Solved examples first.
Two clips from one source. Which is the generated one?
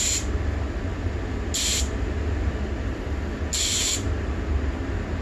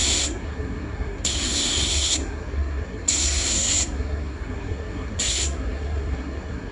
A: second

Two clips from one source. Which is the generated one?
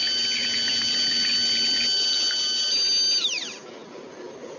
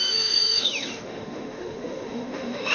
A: second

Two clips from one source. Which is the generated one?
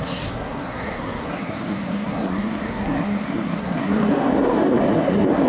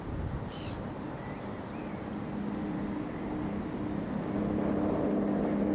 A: first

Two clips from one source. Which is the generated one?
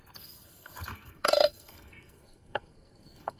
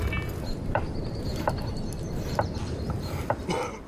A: first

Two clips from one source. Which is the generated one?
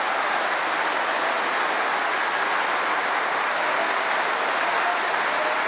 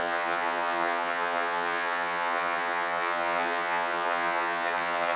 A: second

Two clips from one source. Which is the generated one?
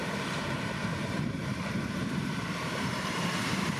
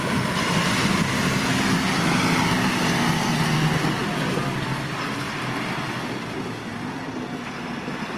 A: first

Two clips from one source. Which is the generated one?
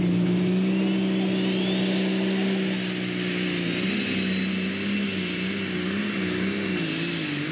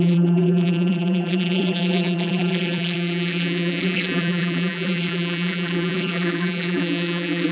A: second